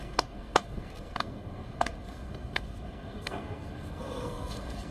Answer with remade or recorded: remade